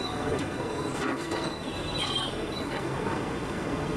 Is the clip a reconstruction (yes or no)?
yes